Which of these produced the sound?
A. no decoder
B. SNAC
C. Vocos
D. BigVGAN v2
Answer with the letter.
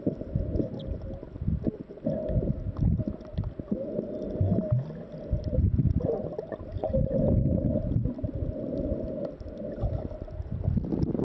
A